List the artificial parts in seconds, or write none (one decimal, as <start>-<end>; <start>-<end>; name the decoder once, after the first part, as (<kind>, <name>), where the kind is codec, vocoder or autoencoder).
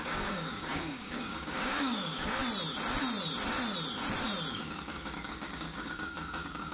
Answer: 0.0-2.4 (codec, DAC); 4.5-6.7